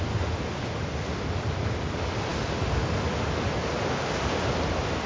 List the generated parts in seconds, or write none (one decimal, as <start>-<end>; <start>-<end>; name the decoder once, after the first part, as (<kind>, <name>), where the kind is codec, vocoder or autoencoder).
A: none